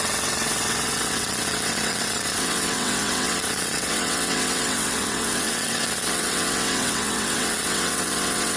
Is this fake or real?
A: fake